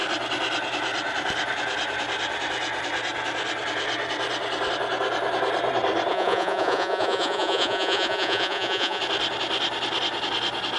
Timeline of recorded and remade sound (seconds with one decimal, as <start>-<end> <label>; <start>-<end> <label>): 0.0-6.1 recorded; 6.1-9.0 remade; 9.0-10.8 recorded